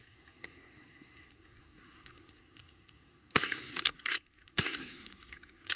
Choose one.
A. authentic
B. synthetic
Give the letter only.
B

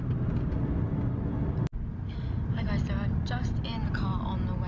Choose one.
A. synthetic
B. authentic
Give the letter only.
B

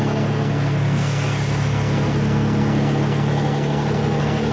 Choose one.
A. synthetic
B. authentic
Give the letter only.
A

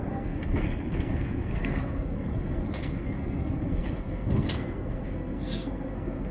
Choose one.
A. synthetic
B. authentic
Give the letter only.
A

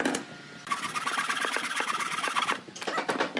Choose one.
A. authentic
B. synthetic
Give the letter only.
A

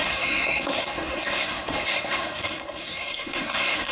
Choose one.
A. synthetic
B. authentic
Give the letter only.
A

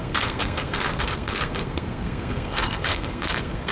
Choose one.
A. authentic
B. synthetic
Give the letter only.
B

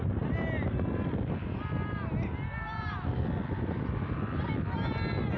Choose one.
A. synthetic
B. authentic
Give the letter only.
B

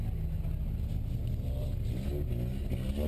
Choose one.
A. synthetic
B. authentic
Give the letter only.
B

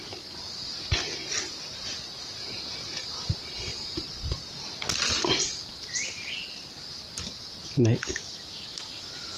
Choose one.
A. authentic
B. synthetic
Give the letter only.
A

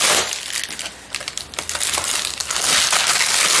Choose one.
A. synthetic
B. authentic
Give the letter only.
B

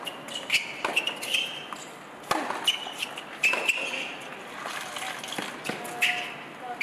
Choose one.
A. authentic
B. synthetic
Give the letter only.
A